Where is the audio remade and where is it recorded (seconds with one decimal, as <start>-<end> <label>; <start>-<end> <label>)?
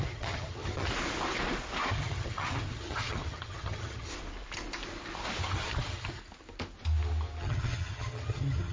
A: 0.0-0.9 remade; 0.9-1.9 recorded; 1.9-4.1 remade; 4.1-5.4 recorded; 5.4-6.2 remade; 6.2-7.4 recorded; 7.4-8.7 remade